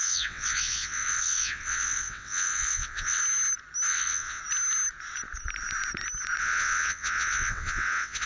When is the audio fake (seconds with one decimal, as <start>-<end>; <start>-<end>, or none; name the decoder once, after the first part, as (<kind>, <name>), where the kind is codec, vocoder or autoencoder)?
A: 0.0-3.2 (vocoder, WaveNeXt); 3.9-4.4; 6.4-8.3

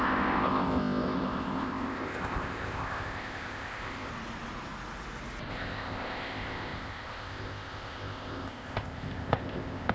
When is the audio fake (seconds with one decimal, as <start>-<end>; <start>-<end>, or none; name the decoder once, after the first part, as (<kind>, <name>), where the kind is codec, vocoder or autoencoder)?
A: 0.0-4.1 (codec, ZipCodec); 5.5-9.9

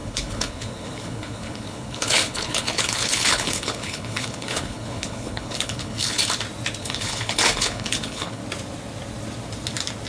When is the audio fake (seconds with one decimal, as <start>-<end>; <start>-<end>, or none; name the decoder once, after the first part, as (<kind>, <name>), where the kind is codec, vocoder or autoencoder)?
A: 0.0-6.2 (codec, HILCodec); 6.8-8.4

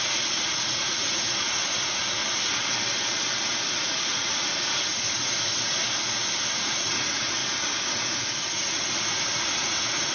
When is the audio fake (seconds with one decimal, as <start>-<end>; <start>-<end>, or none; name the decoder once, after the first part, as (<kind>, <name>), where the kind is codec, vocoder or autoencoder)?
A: 0.0-2.2 (vocoder, Vocos); 3.5-5.8; 6.4-7.4; 7.9-10.1

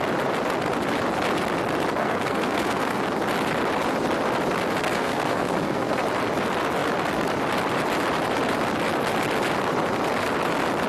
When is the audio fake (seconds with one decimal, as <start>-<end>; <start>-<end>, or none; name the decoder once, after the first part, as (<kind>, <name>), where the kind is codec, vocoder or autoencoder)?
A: 2.0-3.0 (codec, SNAC); 4.8-6.0